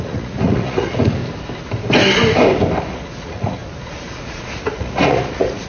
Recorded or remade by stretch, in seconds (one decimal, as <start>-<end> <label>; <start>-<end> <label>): 0.0-1.2 remade; 1.2-2.8 recorded; 2.8-5.7 remade